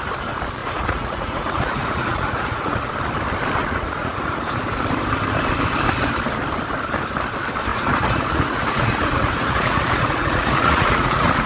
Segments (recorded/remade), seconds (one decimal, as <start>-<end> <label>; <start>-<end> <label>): 0.0-0.6 recorded; 0.6-2.9 remade; 2.9-3.6 recorded; 3.6-4.6 remade; 4.6-7.7 recorded; 7.7-11.5 remade